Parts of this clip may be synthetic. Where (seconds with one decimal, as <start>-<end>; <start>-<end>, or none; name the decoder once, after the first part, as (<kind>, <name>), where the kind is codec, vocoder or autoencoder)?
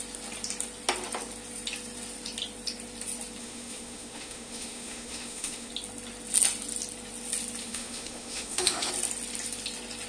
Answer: 3.4-5.7 (autoencoder, DAC-VAE); 7.6-8.9